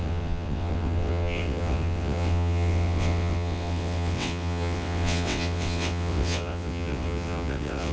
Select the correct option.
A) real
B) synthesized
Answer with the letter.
B